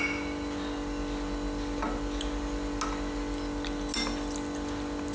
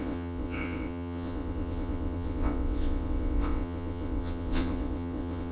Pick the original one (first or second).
first